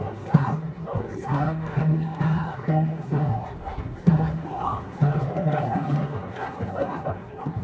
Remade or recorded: remade